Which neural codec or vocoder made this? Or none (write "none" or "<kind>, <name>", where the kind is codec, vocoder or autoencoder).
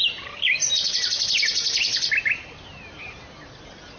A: none